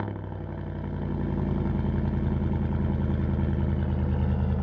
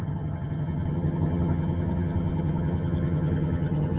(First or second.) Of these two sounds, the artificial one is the second